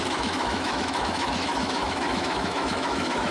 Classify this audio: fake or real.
fake